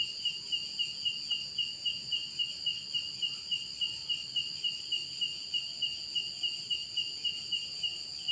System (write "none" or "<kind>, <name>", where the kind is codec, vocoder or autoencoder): none